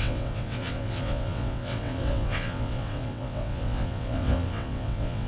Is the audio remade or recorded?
remade